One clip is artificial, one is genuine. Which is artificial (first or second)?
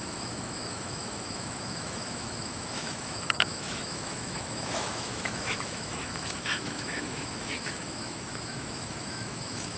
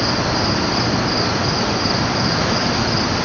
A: first